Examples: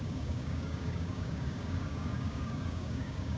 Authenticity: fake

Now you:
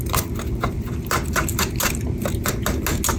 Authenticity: real